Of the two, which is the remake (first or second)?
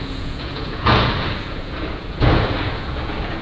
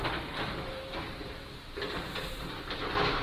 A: first